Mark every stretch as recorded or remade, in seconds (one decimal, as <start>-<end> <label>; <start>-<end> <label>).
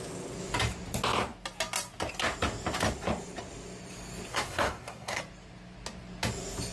0.0-4.3 recorded; 4.3-5.2 remade; 5.2-6.7 recorded